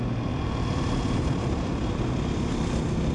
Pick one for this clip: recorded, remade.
recorded